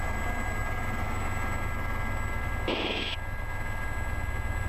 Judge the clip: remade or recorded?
recorded